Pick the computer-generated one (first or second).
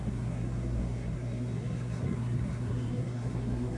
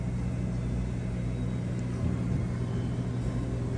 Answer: first